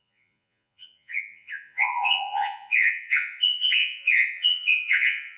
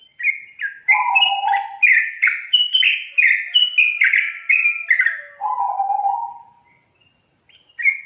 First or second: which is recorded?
second